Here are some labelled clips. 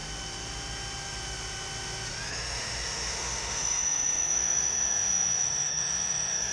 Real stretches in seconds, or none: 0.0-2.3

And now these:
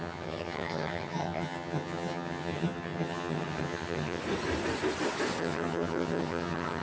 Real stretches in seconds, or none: 4.2-5.4

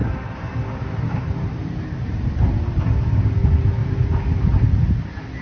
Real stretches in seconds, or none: 0.0-1.6; 2.5-3.8; 4.5-5.4

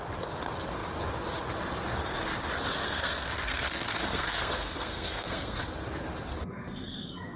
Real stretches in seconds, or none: 0.0-2.8; 5.6-6.3

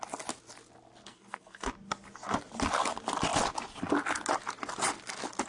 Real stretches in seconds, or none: 0.0-1.0; 1.7-5.5